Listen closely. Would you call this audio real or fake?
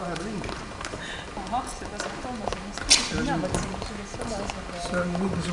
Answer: real